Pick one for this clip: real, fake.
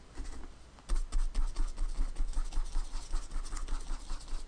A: real